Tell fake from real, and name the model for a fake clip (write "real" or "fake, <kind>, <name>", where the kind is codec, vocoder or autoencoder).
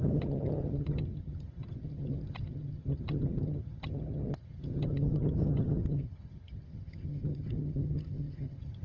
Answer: fake, vocoder, HiFi-GAN